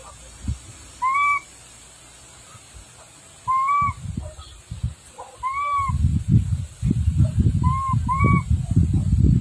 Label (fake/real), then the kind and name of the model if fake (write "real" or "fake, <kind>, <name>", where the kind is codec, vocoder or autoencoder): real